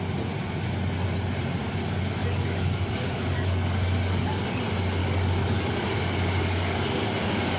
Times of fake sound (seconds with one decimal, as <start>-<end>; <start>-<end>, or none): 2.2-4.6; 5.0-7.6